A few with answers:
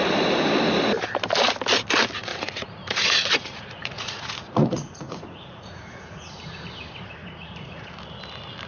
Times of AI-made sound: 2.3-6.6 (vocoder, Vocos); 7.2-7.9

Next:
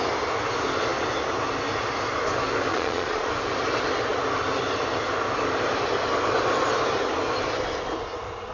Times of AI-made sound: 2.7-3.3 (vocoder, Vocos)

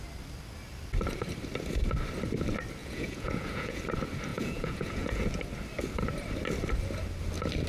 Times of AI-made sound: 2.8-3.8 (vocoder, Vocos); 4.3-5.2

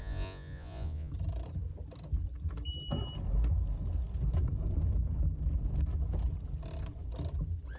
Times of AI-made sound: 0.0-1.1 (vocoder, Vocos)

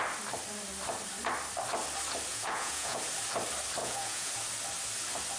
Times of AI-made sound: 2.3-3.0 (vocoder, Vocos); 3.8-4.3

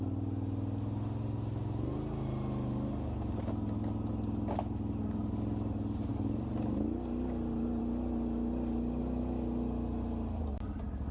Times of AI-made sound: none

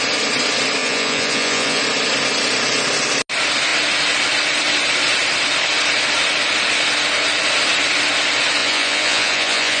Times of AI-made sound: 0.8-1.8 (vocoder, Vocos); 8.6-9.8

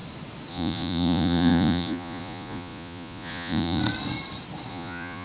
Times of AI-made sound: 0.5-3.8 (vocoder, Vocos); 4.7-5.2